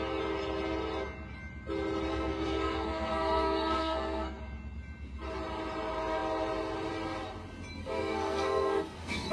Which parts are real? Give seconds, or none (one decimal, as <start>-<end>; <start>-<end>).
0.0-2.1; 4.4-7.8